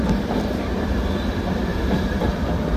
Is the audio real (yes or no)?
no